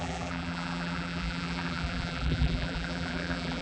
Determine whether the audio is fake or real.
fake